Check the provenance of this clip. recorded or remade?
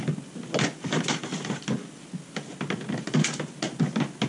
recorded